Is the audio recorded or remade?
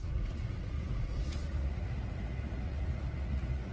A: remade